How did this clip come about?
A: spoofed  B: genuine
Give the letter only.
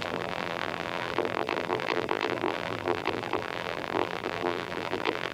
A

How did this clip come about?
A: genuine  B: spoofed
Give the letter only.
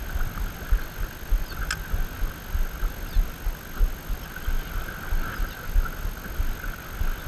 A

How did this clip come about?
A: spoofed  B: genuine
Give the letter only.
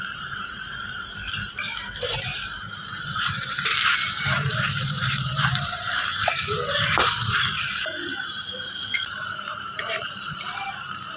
A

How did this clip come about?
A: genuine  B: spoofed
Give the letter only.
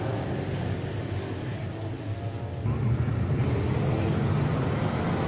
A